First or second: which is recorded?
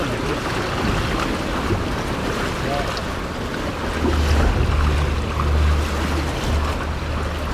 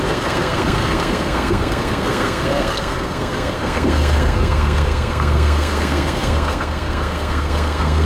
first